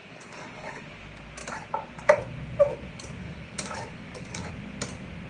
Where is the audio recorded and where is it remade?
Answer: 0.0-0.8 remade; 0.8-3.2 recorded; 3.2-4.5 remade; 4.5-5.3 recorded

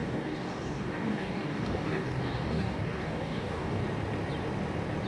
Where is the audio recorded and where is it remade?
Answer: 0.0-3.8 remade; 3.8-5.1 recorded

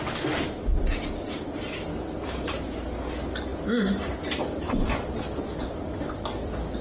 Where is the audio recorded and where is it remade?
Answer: 0.0-1.9 recorded; 1.9-2.5 remade; 2.5-6.8 recorded

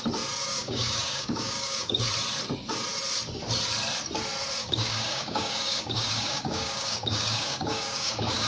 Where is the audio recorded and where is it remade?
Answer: 0.0-0.4 recorded; 0.4-2.1 remade; 2.1-4.6 recorded; 4.6-8.5 remade

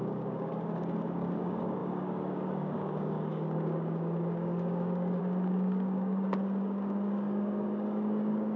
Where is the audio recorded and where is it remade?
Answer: 0.0-8.6 remade